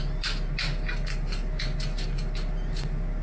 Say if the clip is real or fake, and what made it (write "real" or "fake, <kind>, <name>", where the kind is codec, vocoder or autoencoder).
real